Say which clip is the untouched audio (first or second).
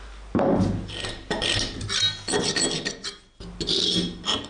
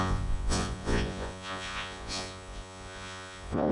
first